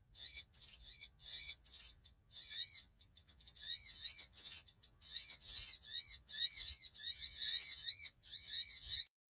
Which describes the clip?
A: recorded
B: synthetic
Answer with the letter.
B